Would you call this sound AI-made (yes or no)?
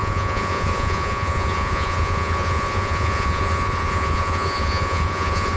yes